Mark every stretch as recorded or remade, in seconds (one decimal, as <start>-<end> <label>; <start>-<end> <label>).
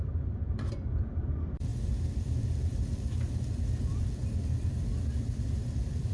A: 0.0-6.1 remade